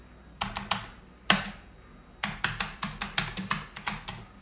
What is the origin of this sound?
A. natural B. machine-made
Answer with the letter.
A